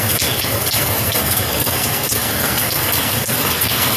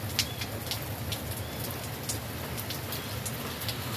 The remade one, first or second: first